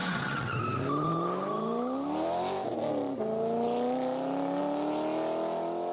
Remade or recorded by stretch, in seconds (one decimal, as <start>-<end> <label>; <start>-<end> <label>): 0.0-0.6 remade; 0.6-5.9 recorded